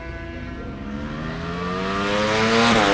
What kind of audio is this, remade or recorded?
recorded